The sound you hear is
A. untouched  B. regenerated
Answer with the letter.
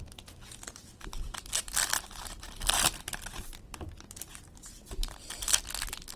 A